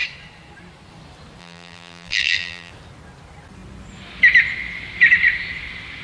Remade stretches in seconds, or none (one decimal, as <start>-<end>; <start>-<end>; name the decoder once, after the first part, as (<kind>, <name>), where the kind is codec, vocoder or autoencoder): 1.4-2.7 (vocoder, BigVGAN v2)